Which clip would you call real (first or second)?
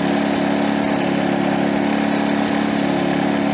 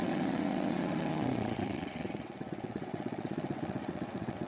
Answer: first